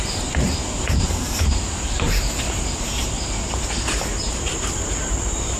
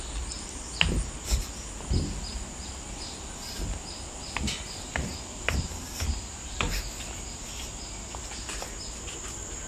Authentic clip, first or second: second